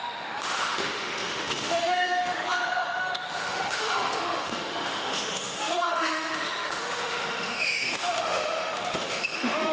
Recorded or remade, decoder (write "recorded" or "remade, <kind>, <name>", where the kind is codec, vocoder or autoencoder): remade, autoencoder, DAC-VAE